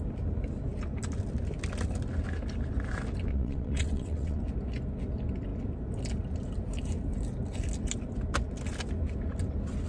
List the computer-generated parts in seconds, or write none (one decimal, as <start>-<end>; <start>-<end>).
3.3-4.4

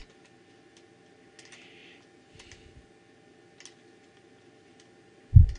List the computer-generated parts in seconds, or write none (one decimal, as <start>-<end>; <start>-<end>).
none

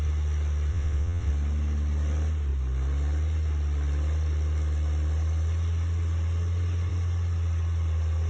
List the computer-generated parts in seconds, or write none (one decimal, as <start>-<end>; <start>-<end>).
0.7-1.3

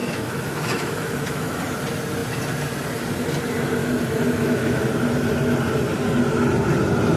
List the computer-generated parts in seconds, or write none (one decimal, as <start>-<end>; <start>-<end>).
0.0-1.6; 3.8-4.9

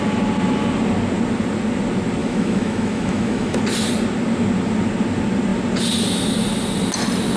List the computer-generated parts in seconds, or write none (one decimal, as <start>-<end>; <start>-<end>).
2.2-3.6

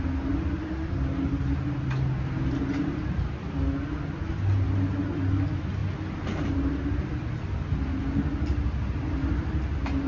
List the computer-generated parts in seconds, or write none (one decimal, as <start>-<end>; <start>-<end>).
none